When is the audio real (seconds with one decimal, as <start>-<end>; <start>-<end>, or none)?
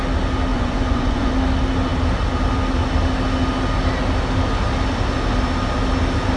0.0-0.5; 1.3-6.4